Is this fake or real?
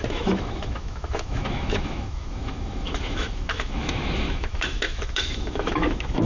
fake